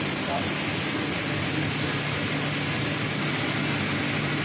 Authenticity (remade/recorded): recorded